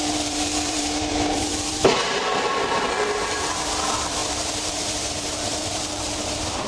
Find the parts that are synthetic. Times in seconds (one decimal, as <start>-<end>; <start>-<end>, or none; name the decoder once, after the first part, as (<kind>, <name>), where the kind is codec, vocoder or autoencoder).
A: 0.0-6.7 (vocoder, BigVGAN v2)